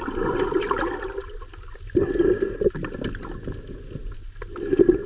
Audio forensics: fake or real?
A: real